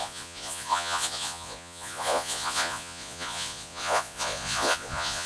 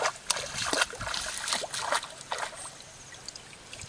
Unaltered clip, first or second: second